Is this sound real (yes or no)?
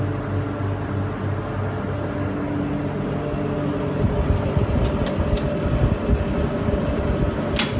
yes